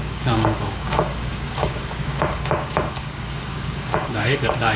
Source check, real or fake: fake